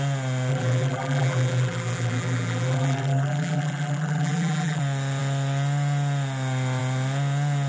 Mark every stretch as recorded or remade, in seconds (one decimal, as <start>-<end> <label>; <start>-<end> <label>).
0.0-0.5 recorded; 0.5-4.8 remade; 4.8-7.7 recorded